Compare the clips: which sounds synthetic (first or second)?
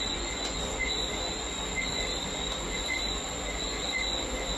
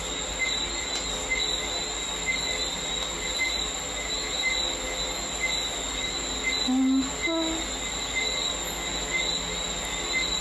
first